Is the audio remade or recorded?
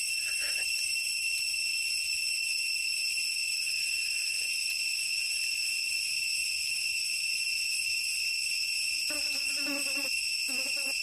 recorded